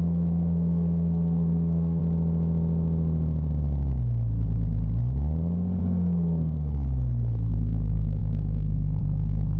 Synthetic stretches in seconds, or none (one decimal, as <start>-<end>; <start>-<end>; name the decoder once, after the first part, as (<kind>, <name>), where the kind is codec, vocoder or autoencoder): 0.0-2.0 (codec, SNAC); 5.8-9.6